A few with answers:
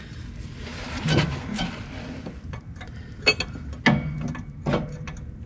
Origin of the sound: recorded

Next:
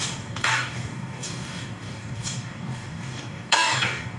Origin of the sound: remade